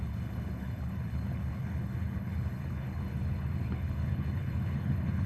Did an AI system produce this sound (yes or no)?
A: yes